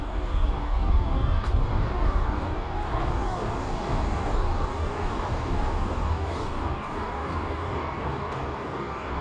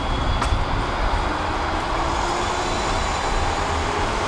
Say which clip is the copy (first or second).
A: first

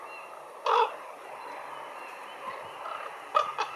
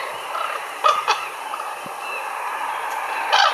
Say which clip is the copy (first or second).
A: second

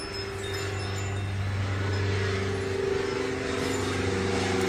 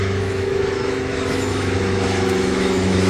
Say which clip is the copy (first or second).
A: second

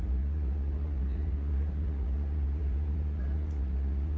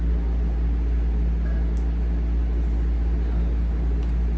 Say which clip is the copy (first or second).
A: first